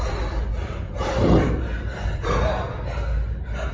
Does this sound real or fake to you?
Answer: real